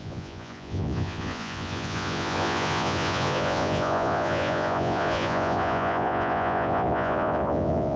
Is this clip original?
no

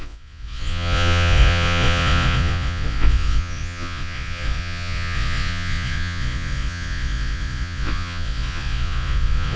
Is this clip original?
no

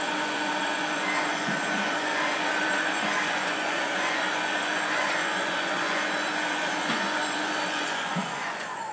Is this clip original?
no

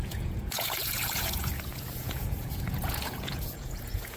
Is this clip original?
no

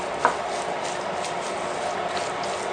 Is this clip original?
yes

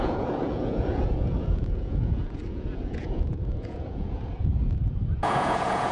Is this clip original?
no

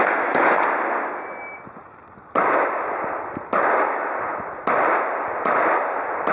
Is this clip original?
yes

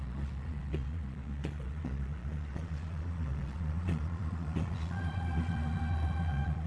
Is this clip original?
no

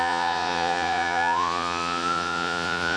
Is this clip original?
no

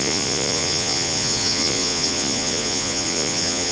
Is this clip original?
no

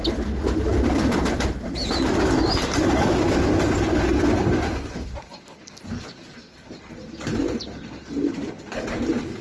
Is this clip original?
yes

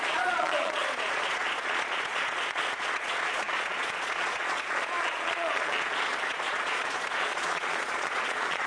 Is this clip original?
no